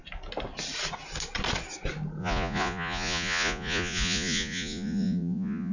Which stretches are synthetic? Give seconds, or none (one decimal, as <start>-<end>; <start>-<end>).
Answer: 2.2-5.7